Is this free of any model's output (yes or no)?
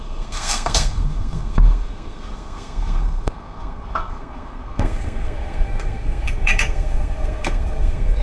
no